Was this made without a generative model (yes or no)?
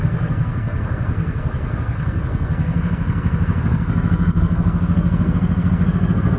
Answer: no